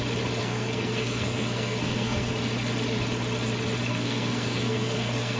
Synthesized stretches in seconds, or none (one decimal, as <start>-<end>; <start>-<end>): 0.4-2.3; 3.9-5.4